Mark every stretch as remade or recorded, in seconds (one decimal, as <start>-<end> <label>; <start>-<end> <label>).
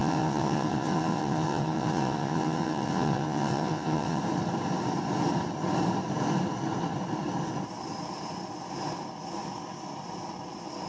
0.0-4.2 remade; 4.2-10.9 recorded